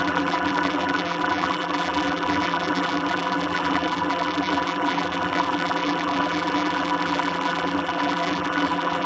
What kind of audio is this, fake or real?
fake